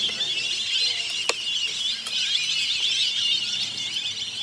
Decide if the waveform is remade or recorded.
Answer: recorded